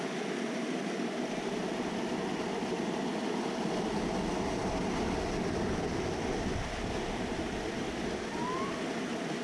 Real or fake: real